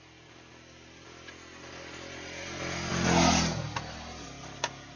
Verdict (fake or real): real